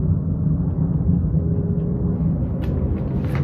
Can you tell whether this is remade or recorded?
recorded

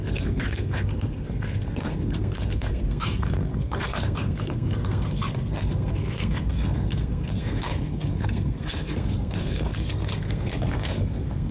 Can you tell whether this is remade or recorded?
remade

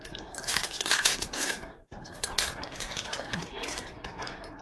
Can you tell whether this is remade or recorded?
remade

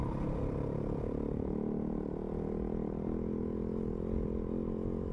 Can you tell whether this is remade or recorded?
recorded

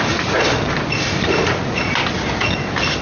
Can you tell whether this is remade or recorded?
recorded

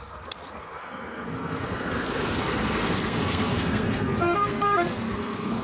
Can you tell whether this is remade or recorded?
remade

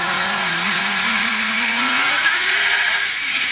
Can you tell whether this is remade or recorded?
remade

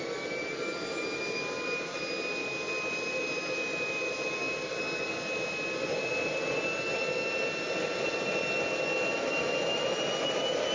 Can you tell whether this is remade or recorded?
recorded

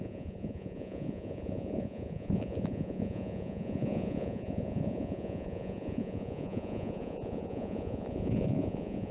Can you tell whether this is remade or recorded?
remade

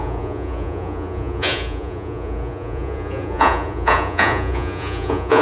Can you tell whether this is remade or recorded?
remade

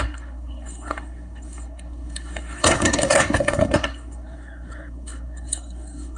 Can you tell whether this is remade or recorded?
remade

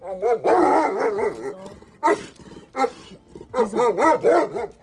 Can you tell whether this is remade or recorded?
recorded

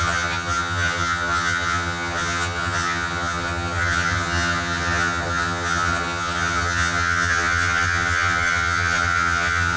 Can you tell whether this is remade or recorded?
remade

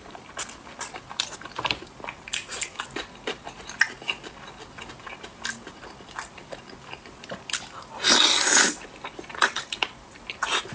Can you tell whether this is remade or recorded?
recorded